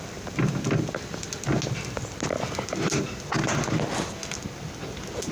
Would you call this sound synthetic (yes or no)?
no